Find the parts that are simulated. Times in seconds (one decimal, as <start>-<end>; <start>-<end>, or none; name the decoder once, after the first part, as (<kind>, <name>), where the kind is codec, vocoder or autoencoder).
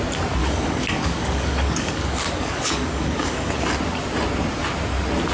0.4-3.6 (codec, DAC)